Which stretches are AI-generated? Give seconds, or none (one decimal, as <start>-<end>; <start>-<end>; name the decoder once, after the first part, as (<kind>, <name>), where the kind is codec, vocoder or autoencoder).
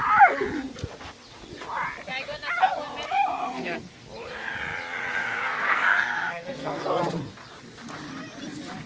3.4-4.0 (codec, SNAC); 5.2-6.8